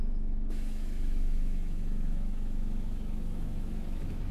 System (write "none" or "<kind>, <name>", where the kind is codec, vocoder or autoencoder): autoencoder, DAC-VAE